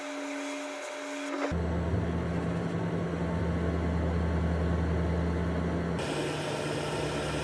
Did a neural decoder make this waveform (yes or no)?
no